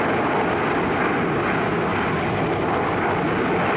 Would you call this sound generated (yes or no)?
no